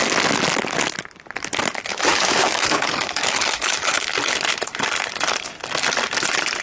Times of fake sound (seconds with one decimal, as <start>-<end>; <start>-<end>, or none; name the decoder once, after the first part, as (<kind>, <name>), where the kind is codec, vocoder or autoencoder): 1.9-4.1 (autoencoder, DAC-VAE)